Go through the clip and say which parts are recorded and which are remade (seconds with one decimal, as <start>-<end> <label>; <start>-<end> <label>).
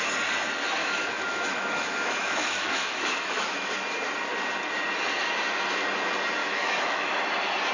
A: 0.0-0.8 recorded; 0.8-3.7 remade; 3.7-6.4 recorded; 6.4-7.1 remade; 7.1-7.7 recorded